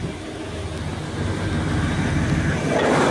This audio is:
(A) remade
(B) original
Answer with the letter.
B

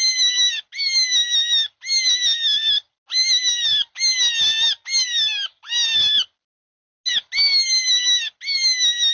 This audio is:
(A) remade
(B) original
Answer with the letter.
B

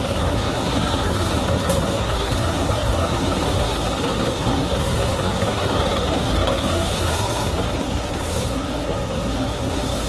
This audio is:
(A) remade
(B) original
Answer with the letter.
A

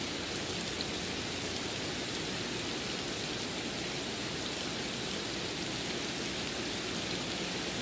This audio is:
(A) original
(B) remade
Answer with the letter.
A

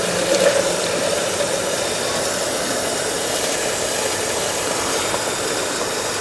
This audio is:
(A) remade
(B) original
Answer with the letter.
B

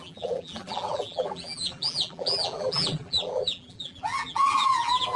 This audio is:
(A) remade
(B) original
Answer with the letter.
A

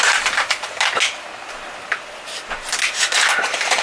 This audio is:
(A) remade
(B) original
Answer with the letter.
B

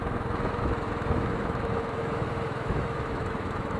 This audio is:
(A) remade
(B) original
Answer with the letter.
A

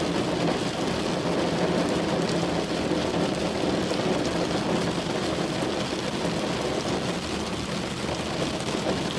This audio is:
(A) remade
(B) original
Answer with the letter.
B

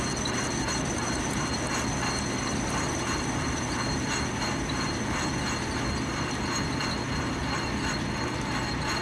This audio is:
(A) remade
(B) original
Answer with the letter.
B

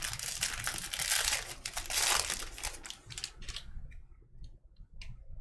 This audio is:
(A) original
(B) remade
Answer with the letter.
A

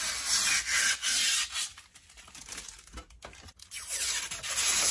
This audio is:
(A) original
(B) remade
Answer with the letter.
A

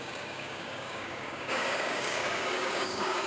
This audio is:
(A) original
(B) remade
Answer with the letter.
B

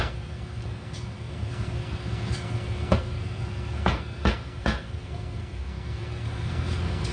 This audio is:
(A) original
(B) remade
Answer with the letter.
B